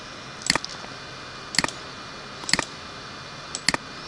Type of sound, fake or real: real